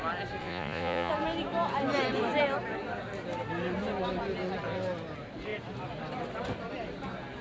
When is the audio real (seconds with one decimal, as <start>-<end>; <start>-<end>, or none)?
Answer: 0.0-0.4; 1.1-7.4

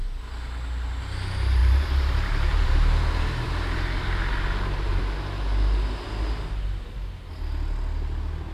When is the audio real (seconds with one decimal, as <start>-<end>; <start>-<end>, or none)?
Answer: 0.0-1.6; 5.0-8.5